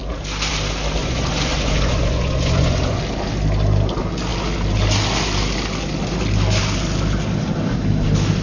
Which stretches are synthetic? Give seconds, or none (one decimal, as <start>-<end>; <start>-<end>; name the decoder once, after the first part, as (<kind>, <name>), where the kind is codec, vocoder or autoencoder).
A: 1.0-3.0 (vocoder, Vocos)